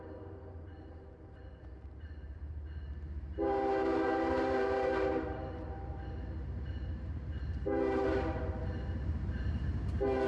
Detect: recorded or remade remade